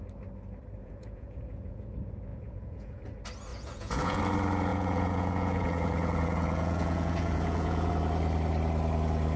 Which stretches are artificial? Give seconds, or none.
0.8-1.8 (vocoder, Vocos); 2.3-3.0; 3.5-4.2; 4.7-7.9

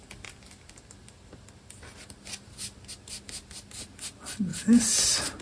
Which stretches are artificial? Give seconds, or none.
none

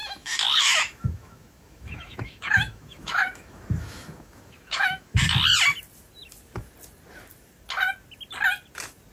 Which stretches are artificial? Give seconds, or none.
0.0-5.2 (autoencoder, DAC-VAE)

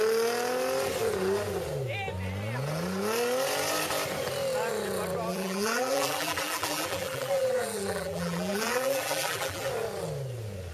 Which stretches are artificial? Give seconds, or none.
5.3-9.7 (vocoder, BigVGAN v2)

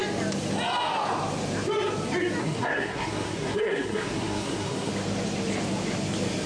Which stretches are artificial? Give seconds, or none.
2.4-4.9 (codec, SNAC)